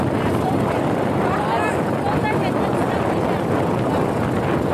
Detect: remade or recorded recorded